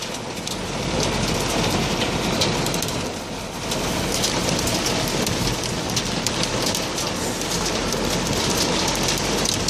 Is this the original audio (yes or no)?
yes